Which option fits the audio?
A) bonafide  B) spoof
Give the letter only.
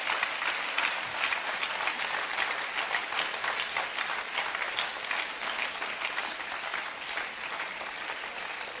A